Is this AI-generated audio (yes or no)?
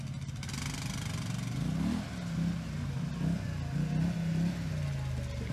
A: no